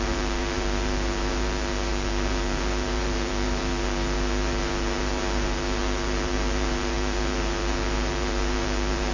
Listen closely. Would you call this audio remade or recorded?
remade